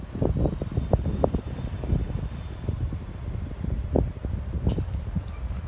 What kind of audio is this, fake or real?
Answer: real